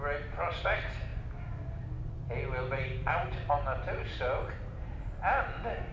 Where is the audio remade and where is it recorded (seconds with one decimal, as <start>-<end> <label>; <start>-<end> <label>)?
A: 0.0-5.9 recorded

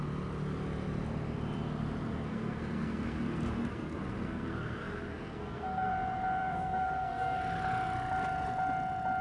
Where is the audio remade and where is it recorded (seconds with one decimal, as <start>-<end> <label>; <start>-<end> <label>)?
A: 0.0-2.3 recorded; 2.3-5.9 remade; 5.9-6.4 recorded; 6.4-7.4 remade; 7.4-9.2 recorded

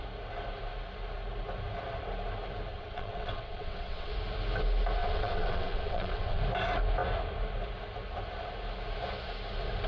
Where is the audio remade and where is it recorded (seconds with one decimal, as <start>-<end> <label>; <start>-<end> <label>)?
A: 0.0-2.7 recorded; 2.7-4.1 remade; 4.1-5.0 recorded; 5.0-6.4 remade; 6.4-9.9 recorded

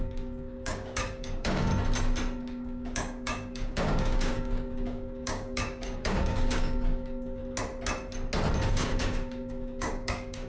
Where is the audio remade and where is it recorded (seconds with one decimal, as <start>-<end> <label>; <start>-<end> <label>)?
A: 0.0-1.7 remade; 1.7-2.4 recorded; 2.4-7.4 remade; 7.4-8.7 recorded; 8.7-10.5 remade

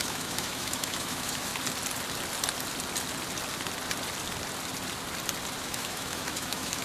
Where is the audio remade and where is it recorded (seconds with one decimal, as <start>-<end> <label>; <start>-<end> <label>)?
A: 0.0-1.5 remade; 1.5-5.6 recorded; 5.6-6.8 remade

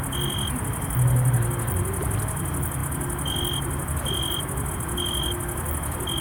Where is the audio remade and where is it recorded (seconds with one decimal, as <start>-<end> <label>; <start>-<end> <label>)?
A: 0.0-6.2 recorded